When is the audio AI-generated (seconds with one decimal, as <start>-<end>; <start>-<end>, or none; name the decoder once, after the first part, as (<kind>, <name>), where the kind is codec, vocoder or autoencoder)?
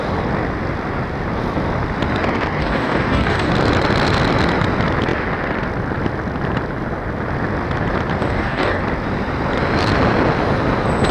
2.6-3.5 (codec, DAC); 8.2-8.8